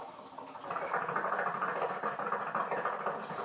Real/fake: fake